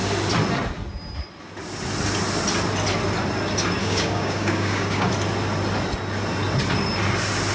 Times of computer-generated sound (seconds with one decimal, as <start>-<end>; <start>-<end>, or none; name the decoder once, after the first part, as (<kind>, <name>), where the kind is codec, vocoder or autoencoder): 3.8-5.1 (codec, DAC)